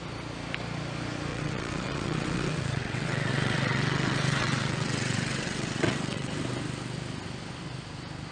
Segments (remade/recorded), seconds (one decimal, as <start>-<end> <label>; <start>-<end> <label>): 0.0-1.3 recorded; 1.3-6.3 remade; 6.3-8.3 recorded